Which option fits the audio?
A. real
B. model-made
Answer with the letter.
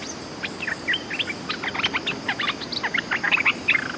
A